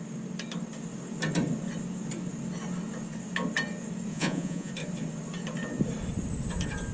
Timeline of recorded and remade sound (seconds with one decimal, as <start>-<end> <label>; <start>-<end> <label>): 0.0-4.1 recorded; 4.1-4.7 remade; 4.7-6.9 recorded